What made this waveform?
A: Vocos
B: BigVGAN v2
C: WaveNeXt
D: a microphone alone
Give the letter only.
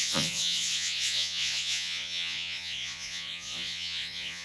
A